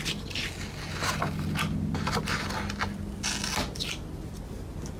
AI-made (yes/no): no